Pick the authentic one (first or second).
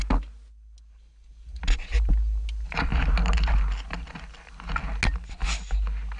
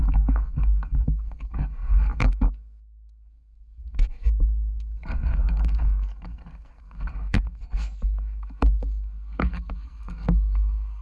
first